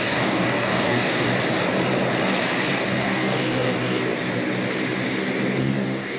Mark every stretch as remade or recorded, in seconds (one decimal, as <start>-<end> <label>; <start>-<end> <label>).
0.0-1.3 remade; 1.3-2.7 recorded; 2.7-4.1 remade; 4.1-5.6 recorded; 5.6-6.2 remade